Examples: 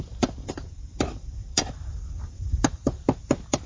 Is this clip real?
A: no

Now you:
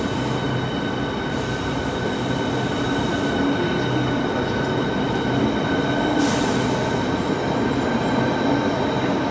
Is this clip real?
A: yes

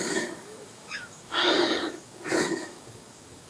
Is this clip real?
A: no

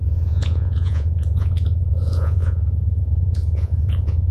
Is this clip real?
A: no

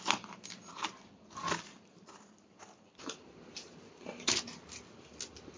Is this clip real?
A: yes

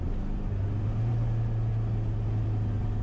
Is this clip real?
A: yes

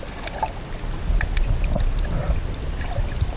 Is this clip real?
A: yes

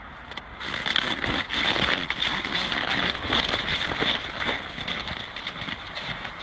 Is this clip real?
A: yes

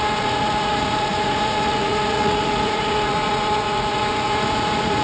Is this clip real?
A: no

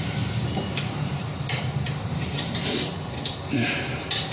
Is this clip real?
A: no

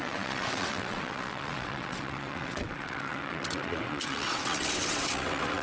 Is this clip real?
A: no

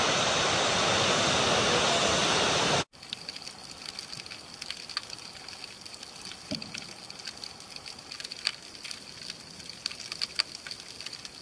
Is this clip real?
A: yes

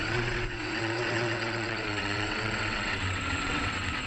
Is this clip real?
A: no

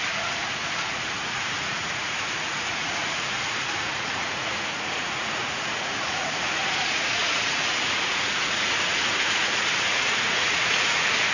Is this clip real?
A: no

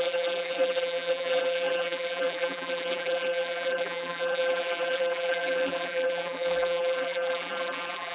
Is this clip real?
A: no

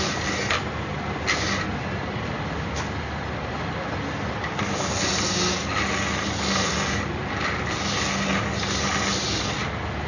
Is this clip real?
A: yes